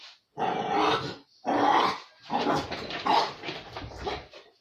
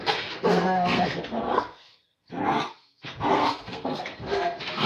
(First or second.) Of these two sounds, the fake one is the second